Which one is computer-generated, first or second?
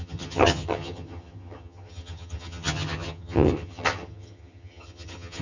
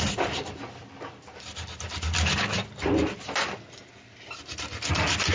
first